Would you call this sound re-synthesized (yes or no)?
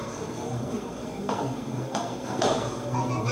yes